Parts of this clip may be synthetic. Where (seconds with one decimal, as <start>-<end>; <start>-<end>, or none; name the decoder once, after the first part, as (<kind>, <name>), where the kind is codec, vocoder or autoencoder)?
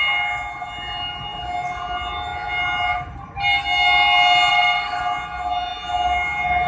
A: 4.5-5.0 (codec, SNAC)